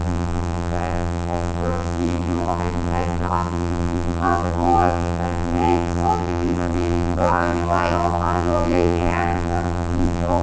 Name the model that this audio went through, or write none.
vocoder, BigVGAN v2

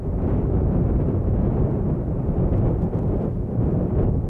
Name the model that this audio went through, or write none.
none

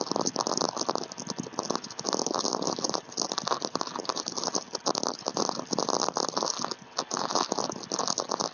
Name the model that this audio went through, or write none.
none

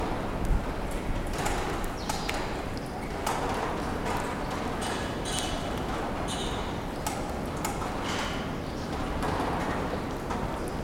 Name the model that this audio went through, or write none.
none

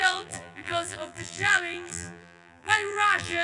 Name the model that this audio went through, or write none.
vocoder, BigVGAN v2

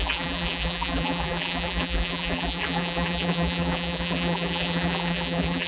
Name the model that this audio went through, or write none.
vocoder, BigVGAN v2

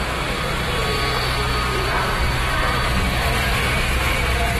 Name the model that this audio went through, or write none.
none